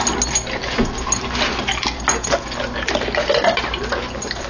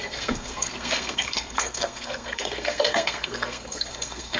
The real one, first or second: first